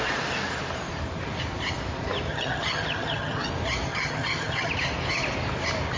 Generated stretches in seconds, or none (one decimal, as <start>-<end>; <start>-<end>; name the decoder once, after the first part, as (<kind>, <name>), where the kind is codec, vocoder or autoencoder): 2.3-3.5 (vocoder, HiFi-GAN); 3.9-4.7